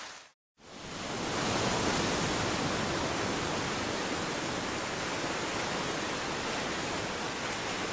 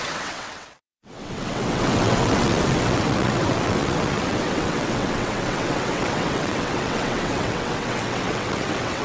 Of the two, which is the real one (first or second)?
first